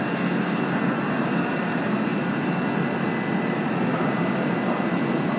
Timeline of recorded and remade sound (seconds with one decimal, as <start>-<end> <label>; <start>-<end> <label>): 0.0-5.4 recorded